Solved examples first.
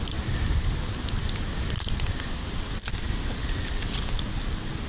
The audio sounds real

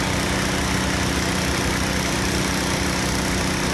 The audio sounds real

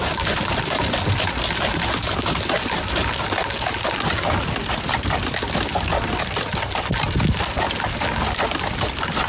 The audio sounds real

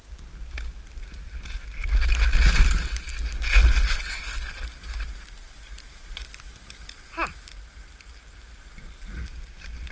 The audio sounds real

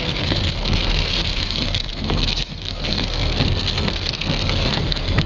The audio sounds fake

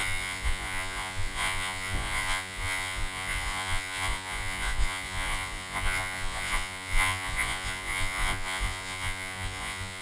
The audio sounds fake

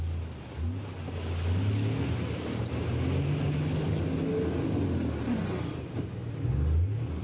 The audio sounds real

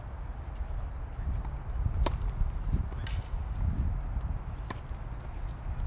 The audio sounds real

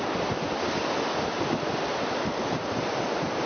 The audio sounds real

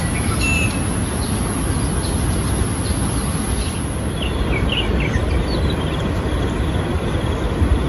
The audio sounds real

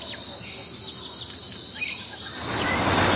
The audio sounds real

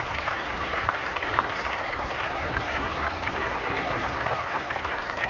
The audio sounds fake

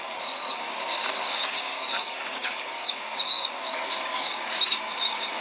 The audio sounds fake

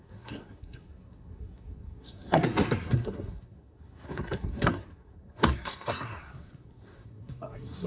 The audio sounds fake